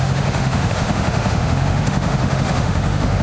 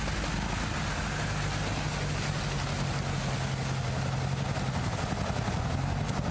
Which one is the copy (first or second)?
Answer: first